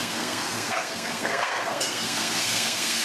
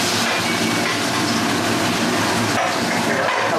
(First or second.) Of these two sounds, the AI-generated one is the first